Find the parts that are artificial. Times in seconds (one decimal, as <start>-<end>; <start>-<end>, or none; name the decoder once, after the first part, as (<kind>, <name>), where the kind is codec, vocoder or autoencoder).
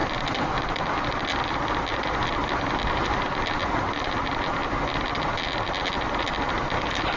none